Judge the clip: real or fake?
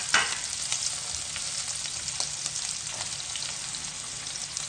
real